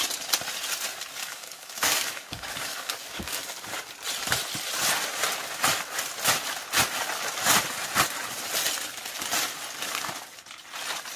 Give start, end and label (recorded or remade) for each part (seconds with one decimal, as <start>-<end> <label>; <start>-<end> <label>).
0.0-1.2 recorded; 1.2-3.7 remade; 3.7-11.2 recorded